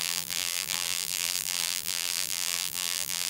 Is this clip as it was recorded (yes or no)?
no